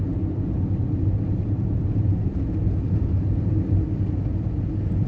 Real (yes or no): yes